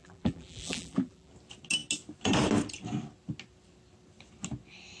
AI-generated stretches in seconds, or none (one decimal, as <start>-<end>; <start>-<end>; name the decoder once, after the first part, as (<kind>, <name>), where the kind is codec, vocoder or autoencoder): 0.0-1.3 (vocoder, BigVGAN v2)